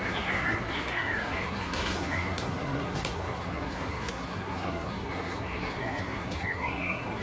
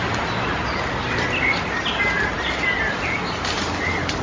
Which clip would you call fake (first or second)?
first